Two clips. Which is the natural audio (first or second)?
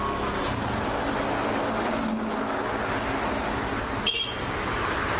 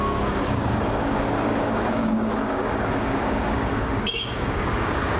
first